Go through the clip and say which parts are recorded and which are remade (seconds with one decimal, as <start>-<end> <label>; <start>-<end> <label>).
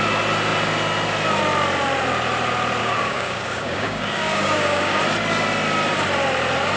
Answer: 0.0-2.8 recorded; 2.8-5.0 remade; 5.0-6.8 recorded